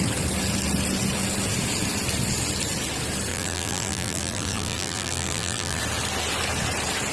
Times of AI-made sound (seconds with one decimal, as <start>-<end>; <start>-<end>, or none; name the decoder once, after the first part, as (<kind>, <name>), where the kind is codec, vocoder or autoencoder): 3.3-5.8 (vocoder, BigVGAN v2)